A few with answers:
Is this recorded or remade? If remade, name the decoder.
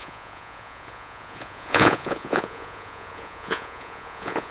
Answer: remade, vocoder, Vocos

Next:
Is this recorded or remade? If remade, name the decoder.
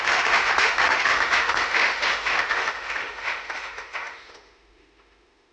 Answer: remade, autoencoder, DAC-VAE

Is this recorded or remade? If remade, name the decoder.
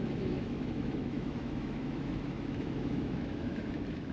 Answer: remade, autoencoder, DAC-VAE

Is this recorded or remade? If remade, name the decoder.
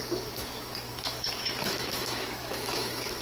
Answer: remade, autoencoder, DAC-VAE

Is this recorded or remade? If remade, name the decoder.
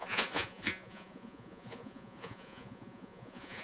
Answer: remade, vocoder, Vocos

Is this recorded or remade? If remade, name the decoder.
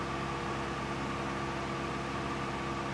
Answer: recorded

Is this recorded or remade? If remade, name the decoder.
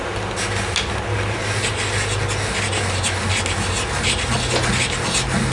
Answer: recorded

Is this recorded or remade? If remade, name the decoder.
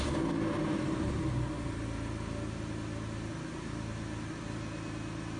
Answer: recorded